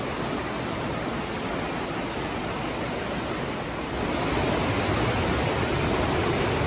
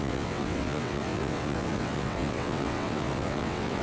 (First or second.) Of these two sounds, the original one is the first